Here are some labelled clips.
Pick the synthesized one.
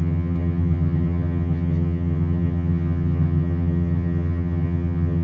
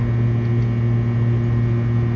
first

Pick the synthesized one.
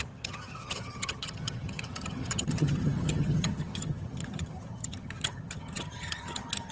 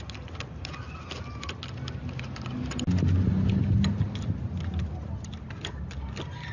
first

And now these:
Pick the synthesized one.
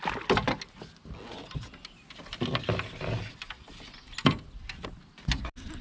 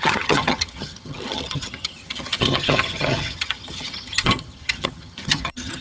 second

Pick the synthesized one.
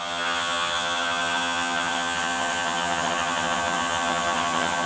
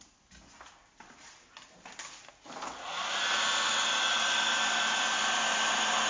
first